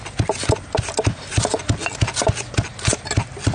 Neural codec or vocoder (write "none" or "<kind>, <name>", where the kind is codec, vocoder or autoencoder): none